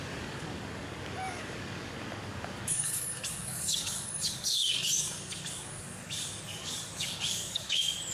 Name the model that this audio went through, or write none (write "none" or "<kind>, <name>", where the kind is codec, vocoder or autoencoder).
codec, DAC